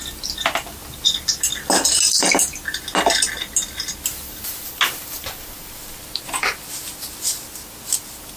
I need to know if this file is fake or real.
real